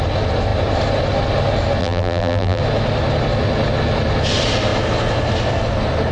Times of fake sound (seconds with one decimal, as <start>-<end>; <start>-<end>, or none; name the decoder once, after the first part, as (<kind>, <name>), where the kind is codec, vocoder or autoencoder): 1.8-2.6 (vocoder, BigVGAN v2)